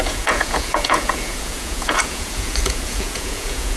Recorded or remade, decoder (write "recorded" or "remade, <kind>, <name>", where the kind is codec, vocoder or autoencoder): remade, vocoder, Vocos